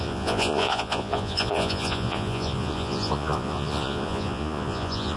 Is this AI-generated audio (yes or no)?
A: yes